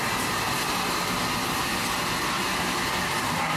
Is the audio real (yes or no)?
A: yes